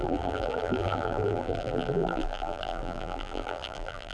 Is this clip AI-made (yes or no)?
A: yes